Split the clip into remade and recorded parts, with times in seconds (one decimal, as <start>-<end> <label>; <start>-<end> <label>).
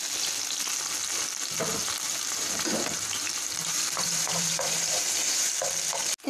0.0-1.7 recorded; 1.7-5.5 remade; 5.5-6.3 recorded